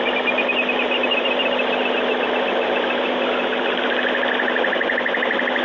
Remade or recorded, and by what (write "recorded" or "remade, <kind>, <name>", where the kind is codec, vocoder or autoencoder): recorded